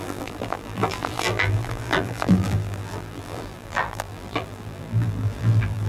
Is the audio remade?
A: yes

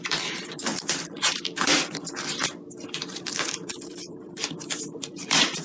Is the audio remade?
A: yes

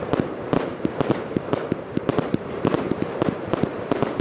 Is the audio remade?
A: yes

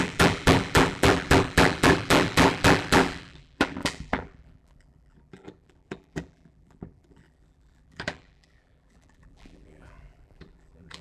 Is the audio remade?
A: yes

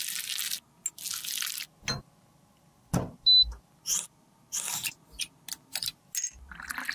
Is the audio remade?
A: no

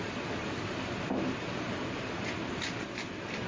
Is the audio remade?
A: yes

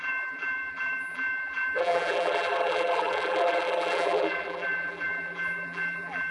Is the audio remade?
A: yes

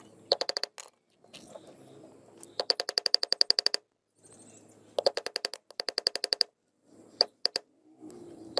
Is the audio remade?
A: no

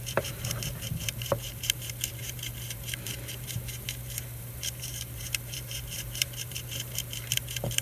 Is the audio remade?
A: yes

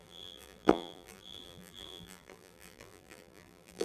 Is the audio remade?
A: yes